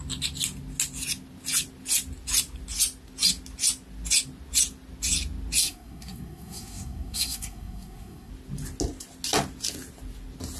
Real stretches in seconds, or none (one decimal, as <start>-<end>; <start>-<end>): 0.0-5.6; 8.3-10.6